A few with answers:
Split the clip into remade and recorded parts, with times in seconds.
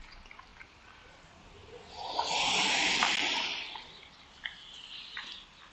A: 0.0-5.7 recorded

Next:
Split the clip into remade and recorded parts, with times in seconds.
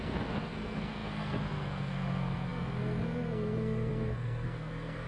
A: 0.0-5.1 remade